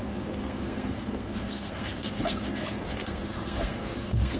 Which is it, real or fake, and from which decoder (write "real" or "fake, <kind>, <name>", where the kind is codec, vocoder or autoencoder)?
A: fake, codec, SNAC